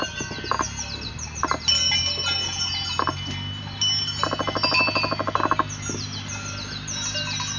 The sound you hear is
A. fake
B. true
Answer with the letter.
B